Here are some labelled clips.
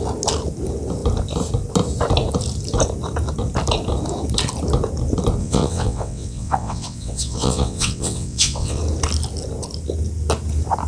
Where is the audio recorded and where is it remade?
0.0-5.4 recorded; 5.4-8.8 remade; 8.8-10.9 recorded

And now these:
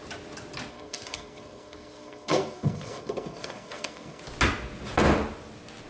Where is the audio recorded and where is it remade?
0.0-0.7 recorded; 0.7-4.2 remade; 4.2-5.9 recorded

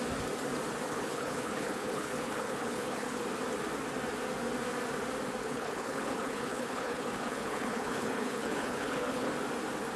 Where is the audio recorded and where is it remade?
0.0-0.9 recorded; 0.9-3.2 remade; 3.2-5.4 recorded; 5.4-9.3 remade; 9.3-10.0 recorded